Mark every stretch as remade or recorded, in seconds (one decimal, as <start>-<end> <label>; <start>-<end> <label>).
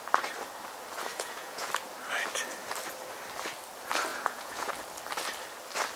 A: 0.0-1.1 recorded; 1.1-1.7 remade; 1.7-4.1 recorded; 4.1-4.7 remade; 4.7-6.0 recorded